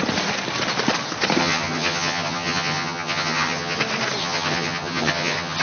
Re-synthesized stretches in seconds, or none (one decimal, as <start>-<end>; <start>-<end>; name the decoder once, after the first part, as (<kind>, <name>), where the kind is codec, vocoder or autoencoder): 1.4-3.8 (vocoder, HiFi-GAN); 4.2-5.6

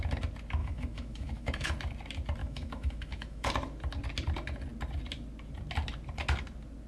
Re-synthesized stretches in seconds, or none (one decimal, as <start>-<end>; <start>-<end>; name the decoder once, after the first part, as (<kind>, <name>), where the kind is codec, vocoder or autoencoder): 0.6-1.7 (autoencoder, DAC-VAE); 2.4-3.5